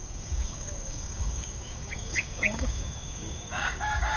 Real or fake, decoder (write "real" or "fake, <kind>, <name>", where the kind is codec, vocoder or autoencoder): fake, codec, DAC